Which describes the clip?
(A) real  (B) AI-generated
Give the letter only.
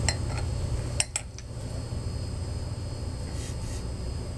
A